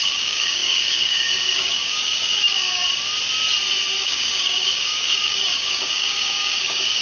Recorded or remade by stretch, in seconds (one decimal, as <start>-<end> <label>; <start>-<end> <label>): 0.0-2.8 remade; 2.8-4.0 recorded; 4.0-7.0 remade

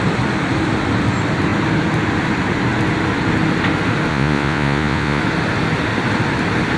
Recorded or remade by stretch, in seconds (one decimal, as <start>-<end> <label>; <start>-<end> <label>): 0.0-4.1 recorded; 4.1-5.2 remade; 5.2-6.8 recorded